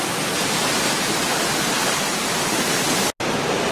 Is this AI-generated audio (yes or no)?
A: no